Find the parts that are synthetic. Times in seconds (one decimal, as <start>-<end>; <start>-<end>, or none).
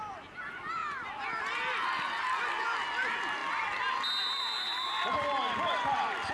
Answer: none